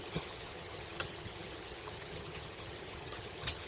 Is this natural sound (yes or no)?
no